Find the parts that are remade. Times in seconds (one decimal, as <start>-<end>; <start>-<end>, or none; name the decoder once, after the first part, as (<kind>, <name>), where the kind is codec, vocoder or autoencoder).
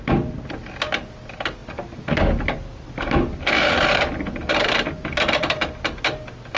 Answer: none